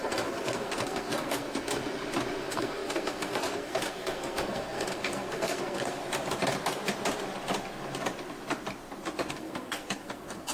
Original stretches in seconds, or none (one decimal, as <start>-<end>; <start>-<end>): 1.8-2.4; 6.0-9.3

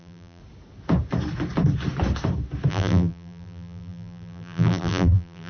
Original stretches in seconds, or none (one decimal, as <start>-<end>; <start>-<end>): 0.4-2.7

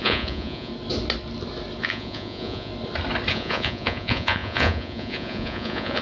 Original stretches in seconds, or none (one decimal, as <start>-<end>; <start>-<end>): 0.7-1.8; 2.7-3.3

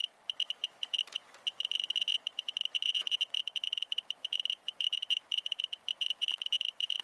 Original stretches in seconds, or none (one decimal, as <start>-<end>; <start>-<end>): none

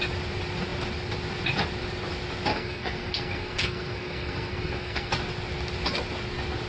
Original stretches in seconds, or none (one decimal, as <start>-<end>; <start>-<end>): 0.0-2.5; 5.1-6.7

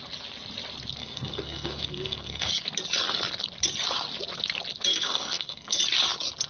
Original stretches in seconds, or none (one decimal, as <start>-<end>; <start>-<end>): 0.0-1.0; 2.5-4.9; 5.8-6.5